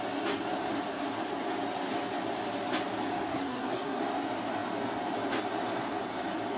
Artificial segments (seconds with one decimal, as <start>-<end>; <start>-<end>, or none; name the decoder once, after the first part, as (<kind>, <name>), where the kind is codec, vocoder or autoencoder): 3.3-4.0 (codec, SNAC)